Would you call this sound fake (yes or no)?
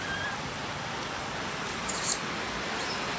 no